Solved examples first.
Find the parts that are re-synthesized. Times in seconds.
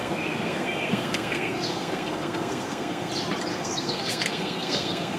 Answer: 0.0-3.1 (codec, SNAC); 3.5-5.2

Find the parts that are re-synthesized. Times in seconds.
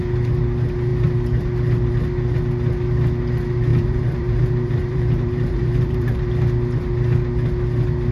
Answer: 3.7-6.3 (vocoder, BigVGAN v2)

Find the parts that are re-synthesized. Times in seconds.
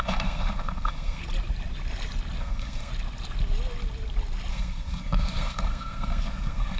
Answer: 0.0-1.2 (codec, SNAC); 2.4-2.9; 4.5-6.8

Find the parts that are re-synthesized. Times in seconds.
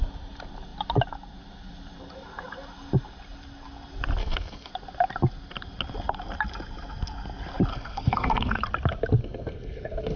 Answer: 4.2-4.7 (codec, SNAC); 7.7-8.6; 9.2-10.2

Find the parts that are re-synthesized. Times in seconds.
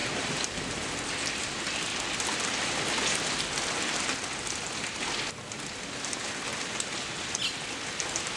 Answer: 0.0-0.9 (vocoder, BigVGAN v2); 6.5-7.1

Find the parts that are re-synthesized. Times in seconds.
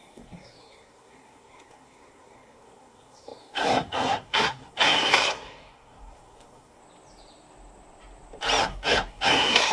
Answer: 0.0-6.8 (codec, SNAC); 8.6-9.7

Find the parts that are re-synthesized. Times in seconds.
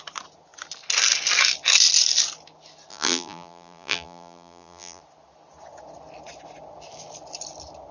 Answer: 2.9-5.0 (vocoder, BigVGAN v2)